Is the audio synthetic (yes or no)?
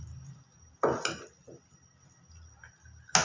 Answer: no